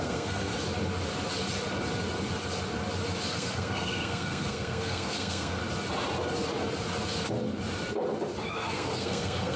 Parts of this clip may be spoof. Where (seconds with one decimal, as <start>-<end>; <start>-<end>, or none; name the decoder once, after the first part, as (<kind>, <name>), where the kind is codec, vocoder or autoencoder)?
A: 0.0-0.5 (codec, SNAC); 3.3-5.6; 8.5-9.6